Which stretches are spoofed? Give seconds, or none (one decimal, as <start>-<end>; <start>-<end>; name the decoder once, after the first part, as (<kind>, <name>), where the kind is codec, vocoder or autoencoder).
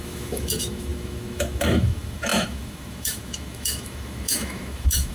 0.0-5.1 (autoencoder, DAC-VAE)